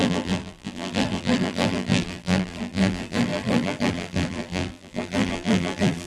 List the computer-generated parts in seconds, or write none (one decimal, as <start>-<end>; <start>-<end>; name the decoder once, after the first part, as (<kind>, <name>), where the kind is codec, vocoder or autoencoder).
0.0-6.1 (vocoder, BigVGAN v2)